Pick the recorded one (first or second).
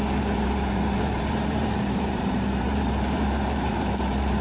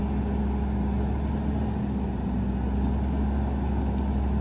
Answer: second